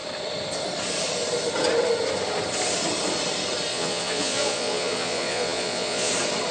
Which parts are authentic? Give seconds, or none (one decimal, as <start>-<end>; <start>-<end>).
0.0-3.7; 6.1-6.5